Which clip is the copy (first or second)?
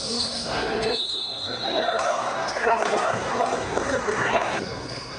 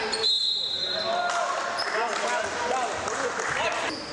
first